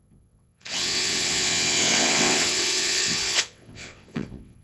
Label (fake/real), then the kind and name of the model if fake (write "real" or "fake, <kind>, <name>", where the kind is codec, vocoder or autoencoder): fake, vocoder, WaveNeXt